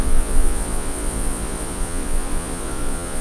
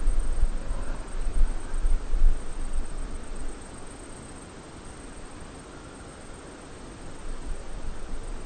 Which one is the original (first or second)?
second